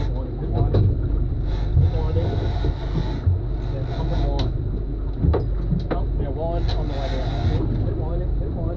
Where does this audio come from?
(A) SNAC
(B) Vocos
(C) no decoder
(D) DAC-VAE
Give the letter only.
C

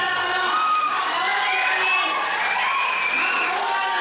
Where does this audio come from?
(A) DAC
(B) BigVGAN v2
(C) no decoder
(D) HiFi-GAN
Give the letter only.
C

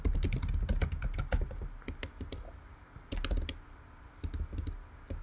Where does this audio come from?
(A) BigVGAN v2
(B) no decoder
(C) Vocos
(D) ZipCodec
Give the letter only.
B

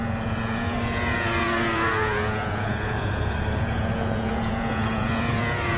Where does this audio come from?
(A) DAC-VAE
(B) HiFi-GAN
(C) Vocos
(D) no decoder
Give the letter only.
C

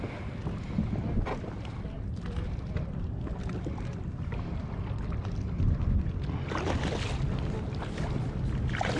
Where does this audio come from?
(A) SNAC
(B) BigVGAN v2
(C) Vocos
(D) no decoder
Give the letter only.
D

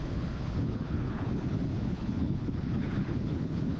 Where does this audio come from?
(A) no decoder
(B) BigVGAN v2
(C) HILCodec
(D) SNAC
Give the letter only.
C